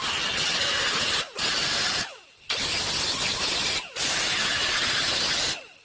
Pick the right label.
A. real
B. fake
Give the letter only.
A